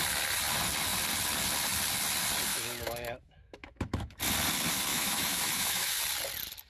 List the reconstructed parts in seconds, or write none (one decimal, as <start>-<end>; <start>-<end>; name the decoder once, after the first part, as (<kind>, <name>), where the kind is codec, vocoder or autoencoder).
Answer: 2.5-4.2 (autoencoder, DAC-VAE); 4.9-6.0